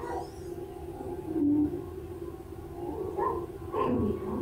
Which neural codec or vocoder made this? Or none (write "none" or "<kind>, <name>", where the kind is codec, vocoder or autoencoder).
none